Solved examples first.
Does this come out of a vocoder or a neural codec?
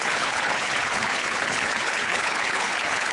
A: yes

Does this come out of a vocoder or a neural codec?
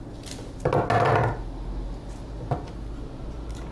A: no